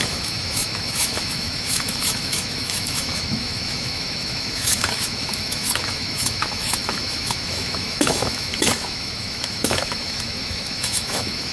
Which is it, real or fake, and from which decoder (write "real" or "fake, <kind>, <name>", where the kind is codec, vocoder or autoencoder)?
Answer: fake, autoencoder, DAC-VAE